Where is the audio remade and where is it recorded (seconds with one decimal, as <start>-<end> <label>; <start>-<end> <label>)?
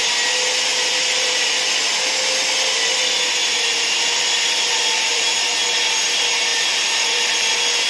0.0-0.7 recorded; 0.7-1.6 remade; 1.6-3.4 recorded; 3.4-5.5 remade; 5.5-6.5 recorded; 6.5-7.5 remade; 7.5-7.9 recorded